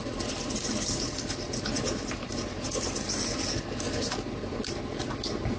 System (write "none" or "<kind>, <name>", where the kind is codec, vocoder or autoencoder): none